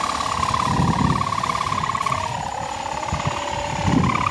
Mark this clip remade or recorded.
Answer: recorded